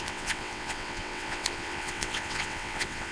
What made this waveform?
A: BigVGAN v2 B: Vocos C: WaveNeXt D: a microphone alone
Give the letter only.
C